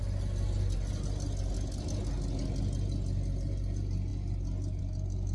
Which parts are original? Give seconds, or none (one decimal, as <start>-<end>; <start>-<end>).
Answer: 0.0-5.3

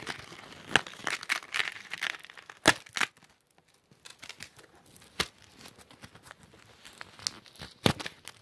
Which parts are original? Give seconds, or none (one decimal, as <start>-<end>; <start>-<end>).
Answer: 0.0-8.4

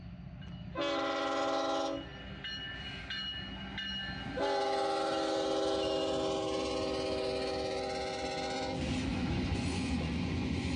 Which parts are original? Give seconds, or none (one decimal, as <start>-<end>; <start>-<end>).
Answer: 0.0-9.1

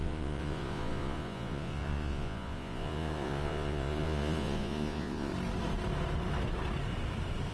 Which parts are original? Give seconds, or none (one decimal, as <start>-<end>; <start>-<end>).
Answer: 5.3-7.5

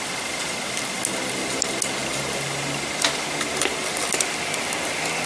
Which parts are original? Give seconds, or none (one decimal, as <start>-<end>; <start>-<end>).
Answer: 0.0-5.3

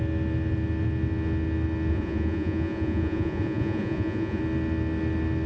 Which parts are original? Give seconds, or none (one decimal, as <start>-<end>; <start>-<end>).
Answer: 0.0-1.9; 4.4-5.5

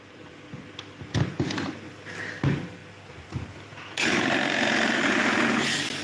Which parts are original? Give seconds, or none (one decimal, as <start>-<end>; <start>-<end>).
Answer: 0.0-6.0